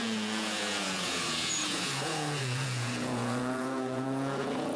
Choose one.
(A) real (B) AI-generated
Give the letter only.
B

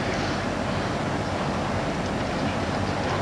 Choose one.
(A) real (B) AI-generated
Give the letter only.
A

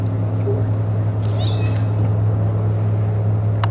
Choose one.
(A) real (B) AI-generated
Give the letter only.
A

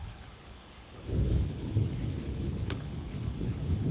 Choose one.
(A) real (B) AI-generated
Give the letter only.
B